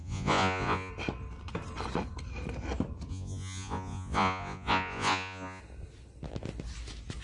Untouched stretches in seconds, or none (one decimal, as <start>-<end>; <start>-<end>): 0.9-3.1; 5.6-7.2